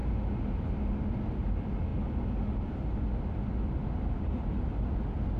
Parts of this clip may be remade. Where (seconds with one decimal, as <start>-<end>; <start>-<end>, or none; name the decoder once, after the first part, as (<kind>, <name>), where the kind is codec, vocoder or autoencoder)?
none